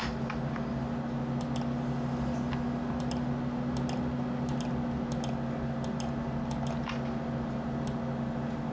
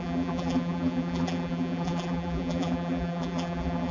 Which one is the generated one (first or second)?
second